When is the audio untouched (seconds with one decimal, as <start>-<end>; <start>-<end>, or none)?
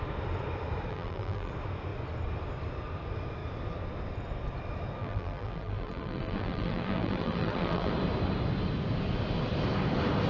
0.0-0.9; 1.5-5.0; 7.9-10.3